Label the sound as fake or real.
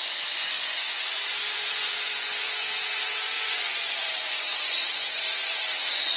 fake